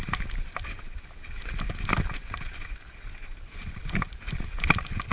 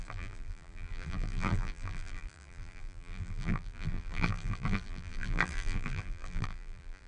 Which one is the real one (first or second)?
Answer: first